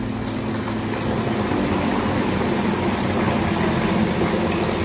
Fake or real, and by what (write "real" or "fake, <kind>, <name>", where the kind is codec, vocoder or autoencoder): real